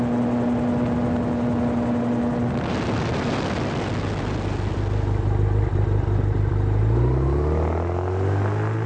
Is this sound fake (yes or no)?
no